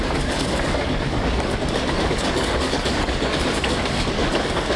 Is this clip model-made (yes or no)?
yes